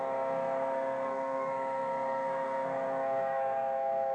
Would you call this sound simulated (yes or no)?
yes